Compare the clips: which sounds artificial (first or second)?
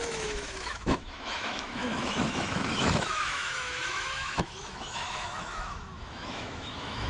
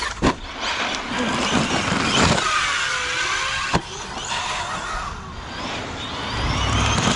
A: first